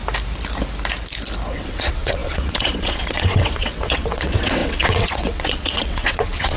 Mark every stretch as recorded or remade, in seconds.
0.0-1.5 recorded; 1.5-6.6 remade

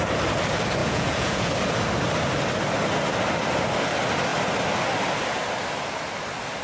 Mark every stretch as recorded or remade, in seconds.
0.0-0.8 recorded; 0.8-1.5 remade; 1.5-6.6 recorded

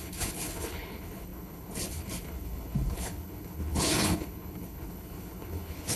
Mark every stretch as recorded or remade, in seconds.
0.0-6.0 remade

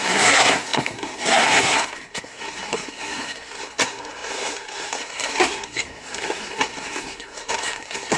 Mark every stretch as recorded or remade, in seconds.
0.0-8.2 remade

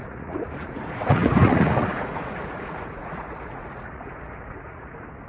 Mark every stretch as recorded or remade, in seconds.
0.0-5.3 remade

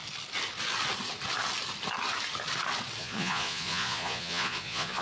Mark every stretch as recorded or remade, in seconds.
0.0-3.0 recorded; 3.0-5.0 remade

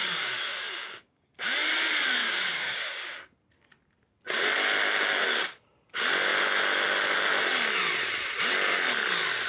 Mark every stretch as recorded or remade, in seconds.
0.0-1.3 remade; 1.3-2.2 recorded; 2.2-3.2 remade; 3.2-9.5 recorded